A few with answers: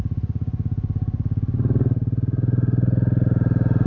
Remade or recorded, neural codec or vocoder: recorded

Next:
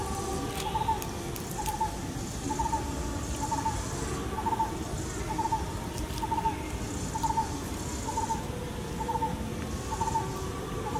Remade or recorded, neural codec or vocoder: recorded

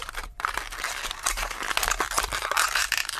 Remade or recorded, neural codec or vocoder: remade, vocoder, BigVGAN v2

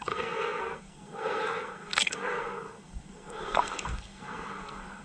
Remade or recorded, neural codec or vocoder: remade, codec, SNAC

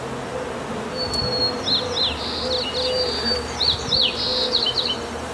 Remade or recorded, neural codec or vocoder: recorded